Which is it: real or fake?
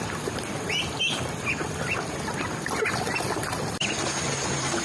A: real